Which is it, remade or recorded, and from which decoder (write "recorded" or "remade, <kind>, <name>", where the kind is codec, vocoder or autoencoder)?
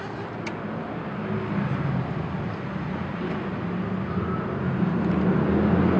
recorded